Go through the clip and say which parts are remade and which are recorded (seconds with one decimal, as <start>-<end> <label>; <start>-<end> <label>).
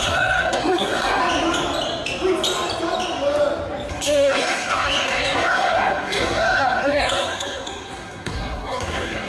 0.0-1.2 remade; 1.2-3.9 recorded; 3.9-9.3 remade